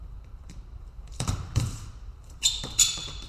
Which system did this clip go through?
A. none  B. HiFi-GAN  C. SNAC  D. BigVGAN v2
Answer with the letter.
D